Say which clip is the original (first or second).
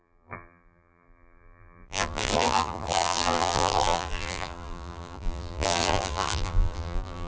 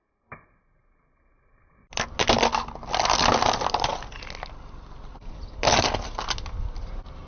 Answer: second